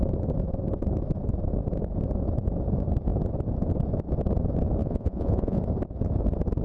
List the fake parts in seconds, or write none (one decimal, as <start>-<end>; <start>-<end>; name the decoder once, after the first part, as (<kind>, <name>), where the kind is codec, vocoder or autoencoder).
4.8-5.6 (vocoder, Vocos)